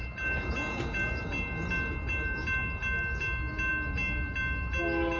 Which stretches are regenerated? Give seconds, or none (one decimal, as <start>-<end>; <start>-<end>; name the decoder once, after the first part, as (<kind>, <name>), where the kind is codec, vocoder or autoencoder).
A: none